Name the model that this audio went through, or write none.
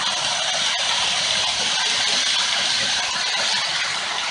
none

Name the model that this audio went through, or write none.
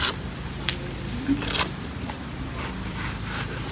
vocoder, BigVGAN v2